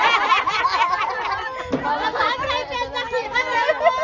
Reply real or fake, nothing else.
real